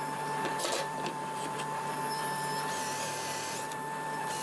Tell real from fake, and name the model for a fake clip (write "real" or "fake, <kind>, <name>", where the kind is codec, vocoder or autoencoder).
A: fake, vocoder, BigVGAN v2